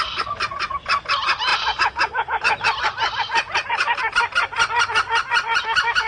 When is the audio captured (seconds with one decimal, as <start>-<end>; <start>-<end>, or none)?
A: 0.0-6.1